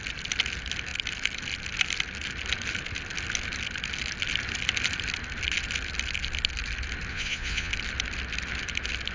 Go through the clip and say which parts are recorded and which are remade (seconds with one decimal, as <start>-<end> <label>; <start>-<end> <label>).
0.0-7.1 recorded; 7.1-7.7 remade; 7.7-9.1 recorded